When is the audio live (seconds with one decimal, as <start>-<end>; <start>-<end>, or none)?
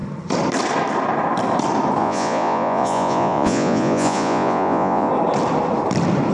0.0-2.0; 5.1-6.3